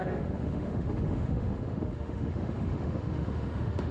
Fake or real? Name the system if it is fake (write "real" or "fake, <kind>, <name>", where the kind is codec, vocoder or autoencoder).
fake, autoencoder, DAC-VAE